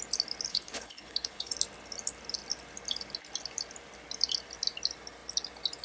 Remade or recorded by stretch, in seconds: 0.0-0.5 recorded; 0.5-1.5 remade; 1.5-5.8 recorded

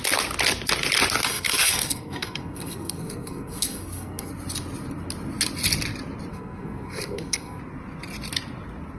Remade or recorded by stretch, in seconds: 0.0-1.3 recorded; 1.3-4.3 remade; 4.3-6.3 recorded; 6.3-7.6 remade; 7.6-9.0 recorded

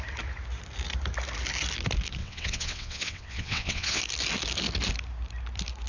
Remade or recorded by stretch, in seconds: 0.0-2.2 recorded; 2.2-4.0 remade; 4.0-5.9 recorded

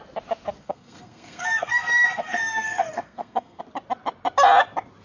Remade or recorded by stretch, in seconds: 0.0-0.6 recorded; 0.6-3.6 remade; 3.6-5.0 recorded

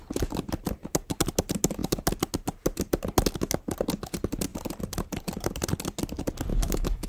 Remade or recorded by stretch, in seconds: 0.0-6.5 recorded; 6.5-7.1 remade

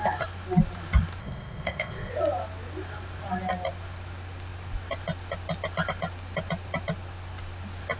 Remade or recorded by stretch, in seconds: 0.0-1.2 recorded; 1.2-2.1 remade; 2.1-8.0 recorded

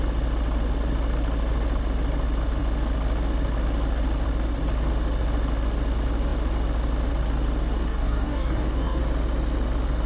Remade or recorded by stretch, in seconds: 0.0-7.9 recorded; 7.9-9.0 remade; 9.0-10.1 recorded